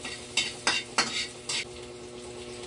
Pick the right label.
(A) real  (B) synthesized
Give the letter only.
A